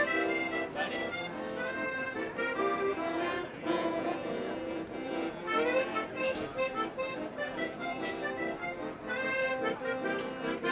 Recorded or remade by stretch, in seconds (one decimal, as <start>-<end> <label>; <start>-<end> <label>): 0.0-2.9 recorded; 2.9-5.4 remade; 5.4-7.5 recorded; 7.5-8.1 remade; 8.1-10.7 recorded